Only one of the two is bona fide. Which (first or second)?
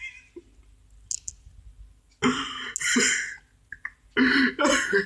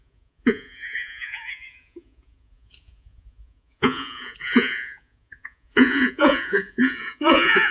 first